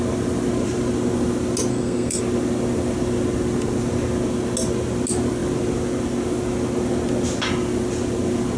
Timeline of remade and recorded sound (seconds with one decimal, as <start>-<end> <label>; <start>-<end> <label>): 0.0-1.7 recorded; 1.7-2.2 remade; 2.2-8.6 recorded